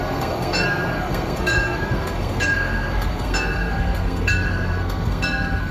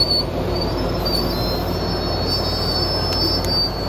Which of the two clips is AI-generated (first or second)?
first